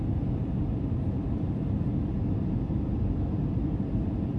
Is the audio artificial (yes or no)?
no